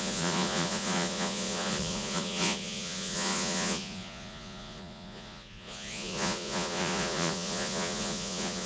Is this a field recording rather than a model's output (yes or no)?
no